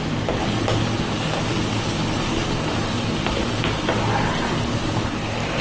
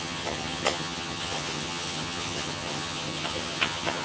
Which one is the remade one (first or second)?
second